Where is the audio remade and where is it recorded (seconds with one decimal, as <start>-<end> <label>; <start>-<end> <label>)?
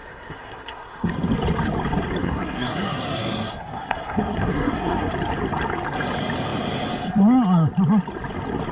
0.0-1.1 remade; 1.1-2.2 recorded; 2.2-5.1 remade; 5.1-8.7 recorded